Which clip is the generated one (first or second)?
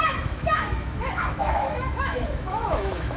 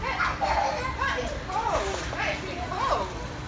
first